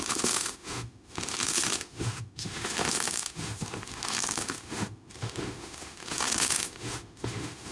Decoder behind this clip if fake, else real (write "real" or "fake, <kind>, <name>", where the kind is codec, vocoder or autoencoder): fake, autoencoder, DAC-VAE